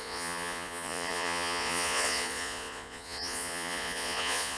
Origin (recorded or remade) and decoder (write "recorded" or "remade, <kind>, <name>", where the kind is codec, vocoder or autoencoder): remade, vocoder, Vocos